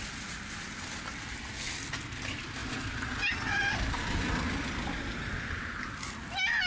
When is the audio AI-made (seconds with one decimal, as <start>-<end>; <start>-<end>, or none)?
none